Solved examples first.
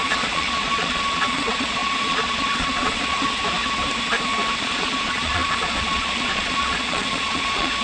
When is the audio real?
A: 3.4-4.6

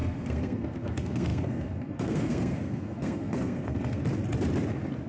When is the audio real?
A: 4.0-5.1